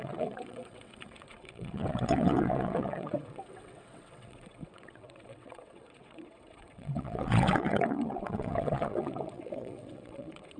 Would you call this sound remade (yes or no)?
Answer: yes